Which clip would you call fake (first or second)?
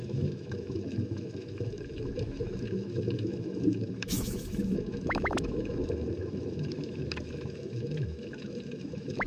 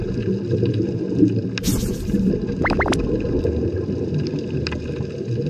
first